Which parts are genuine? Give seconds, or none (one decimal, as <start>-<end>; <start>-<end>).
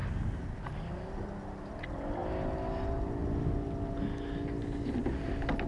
0.0-5.7